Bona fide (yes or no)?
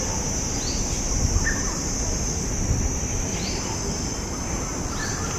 yes